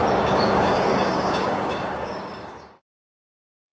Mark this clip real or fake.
fake